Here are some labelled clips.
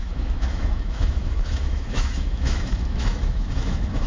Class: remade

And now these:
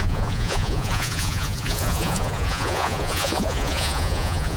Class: remade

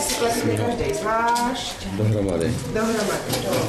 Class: recorded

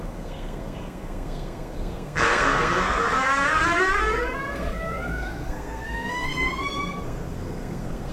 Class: remade